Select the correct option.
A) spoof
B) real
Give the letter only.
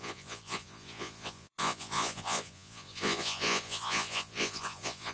A